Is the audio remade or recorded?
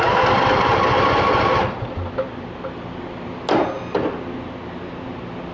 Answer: recorded